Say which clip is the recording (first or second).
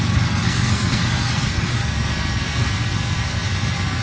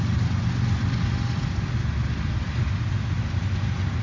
second